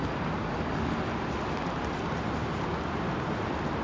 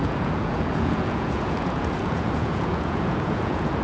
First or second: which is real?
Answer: first